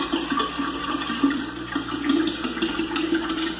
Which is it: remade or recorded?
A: recorded